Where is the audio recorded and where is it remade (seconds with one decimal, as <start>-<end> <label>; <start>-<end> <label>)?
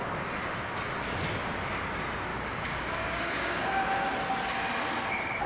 0.0-2.3 recorded; 2.3-4.1 remade; 4.1-5.5 recorded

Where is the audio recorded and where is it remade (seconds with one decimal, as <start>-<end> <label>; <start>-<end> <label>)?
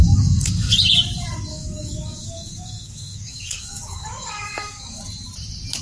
0.0-0.8 remade; 0.8-1.5 recorded; 1.5-5.0 remade; 5.0-5.8 recorded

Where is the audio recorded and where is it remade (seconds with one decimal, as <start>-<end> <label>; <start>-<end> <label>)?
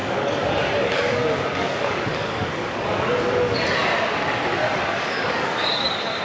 0.0-3.1 remade; 3.1-4.6 recorded; 4.6-6.2 remade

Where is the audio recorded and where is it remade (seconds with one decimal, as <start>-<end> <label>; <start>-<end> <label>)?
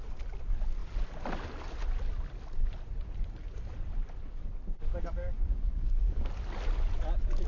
0.0-5.2 recorded; 5.2-6.3 remade; 6.3-7.5 recorded